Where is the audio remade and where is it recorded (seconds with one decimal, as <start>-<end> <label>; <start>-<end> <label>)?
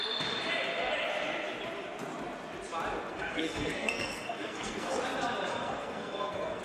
0.0-3.1 recorded; 3.1-5.0 remade; 5.0-5.5 recorded; 5.5-6.6 remade